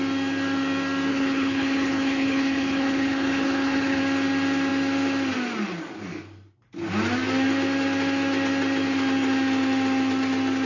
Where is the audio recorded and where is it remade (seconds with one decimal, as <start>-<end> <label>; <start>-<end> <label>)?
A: 0.0-1.1 recorded; 1.1-4.0 remade; 4.0-10.7 recorded